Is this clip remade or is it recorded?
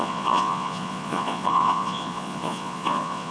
remade